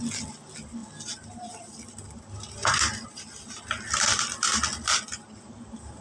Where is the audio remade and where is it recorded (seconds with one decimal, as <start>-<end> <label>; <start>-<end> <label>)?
0.0-6.0 recorded

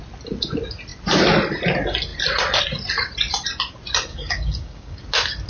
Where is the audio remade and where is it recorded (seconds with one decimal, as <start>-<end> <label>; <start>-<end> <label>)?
0.0-4.1 recorded; 4.1-5.0 remade; 5.0-5.5 recorded

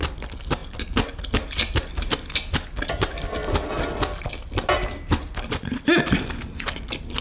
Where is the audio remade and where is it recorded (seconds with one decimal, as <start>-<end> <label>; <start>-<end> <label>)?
0.0-7.2 recorded

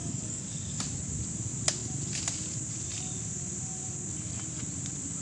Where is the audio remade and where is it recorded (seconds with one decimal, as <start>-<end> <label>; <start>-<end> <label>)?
0.0-0.8 remade; 0.8-5.2 recorded

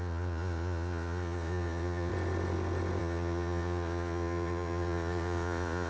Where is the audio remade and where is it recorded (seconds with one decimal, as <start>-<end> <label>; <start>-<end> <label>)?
0.0-2.1 remade; 2.1-3.0 recorded; 3.0-5.9 remade

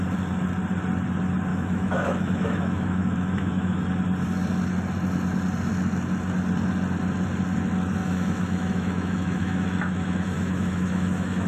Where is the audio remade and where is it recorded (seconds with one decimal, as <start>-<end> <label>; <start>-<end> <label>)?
0.0-1.5 recorded; 1.5-3.8 remade; 3.8-8.0 recorded; 8.0-11.5 remade

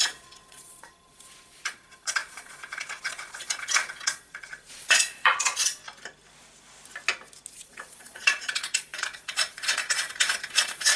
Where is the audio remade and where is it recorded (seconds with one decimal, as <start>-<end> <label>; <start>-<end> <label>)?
0.0-5.8 remade; 5.8-7.5 recorded; 7.5-11.0 remade

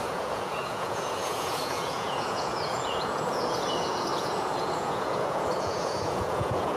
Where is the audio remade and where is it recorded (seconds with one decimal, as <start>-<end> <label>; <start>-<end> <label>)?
0.0-6.8 remade